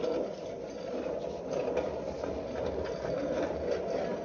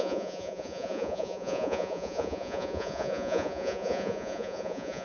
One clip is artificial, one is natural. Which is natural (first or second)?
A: first